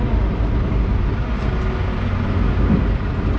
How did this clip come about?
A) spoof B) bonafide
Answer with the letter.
B